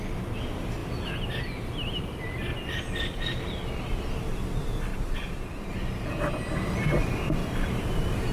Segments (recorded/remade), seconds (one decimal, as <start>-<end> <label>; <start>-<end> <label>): 0.0-4.9 recorded; 4.9-5.7 remade; 5.7-7.4 recorded; 7.4-8.3 remade